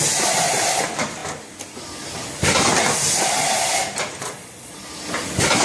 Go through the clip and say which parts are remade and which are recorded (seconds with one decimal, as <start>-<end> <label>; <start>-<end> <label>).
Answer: 0.0-4.2 recorded; 4.2-4.9 remade; 4.9-5.6 recorded

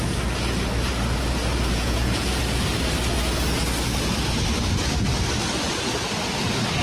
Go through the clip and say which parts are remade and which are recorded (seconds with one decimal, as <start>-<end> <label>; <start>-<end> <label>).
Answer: 0.0-1.7 recorded; 1.7-2.4 remade; 2.4-6.8 recorded